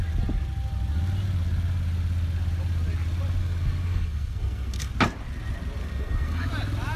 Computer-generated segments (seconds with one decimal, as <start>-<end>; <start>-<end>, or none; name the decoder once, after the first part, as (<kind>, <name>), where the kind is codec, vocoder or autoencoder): 3.4-4.9 (codec, SNAC); 5.8-6.5